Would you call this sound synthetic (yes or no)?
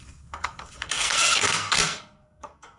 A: yes